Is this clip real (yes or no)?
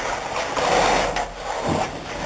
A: yes